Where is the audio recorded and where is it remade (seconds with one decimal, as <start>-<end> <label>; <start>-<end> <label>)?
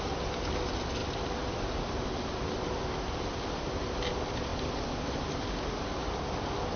0.0-1.0 recorded; 1.0-3.3 remade; 3.3-6.8 recorded